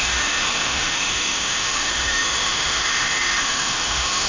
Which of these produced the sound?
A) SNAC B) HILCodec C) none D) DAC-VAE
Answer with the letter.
D